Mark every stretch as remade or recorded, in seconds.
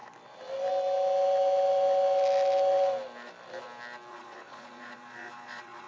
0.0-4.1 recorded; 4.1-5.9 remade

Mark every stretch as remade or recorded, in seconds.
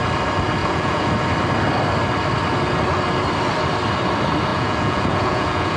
0.0-0.6 recorded; 0.6-1.1 remade; 1.1-4.5 recorded; 4.5-5.8 remade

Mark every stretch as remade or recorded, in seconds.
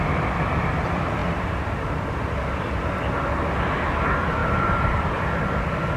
0.0-1.2 recorded; 1.2-2.1 remade; 2.1-4.4 recorded; 4.4-5.2 remade; 5.2-6.0 recorded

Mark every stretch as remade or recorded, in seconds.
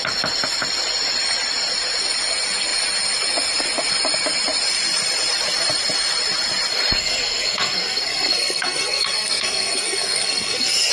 0.0-7.0 recorded; 7.0-10.9 remade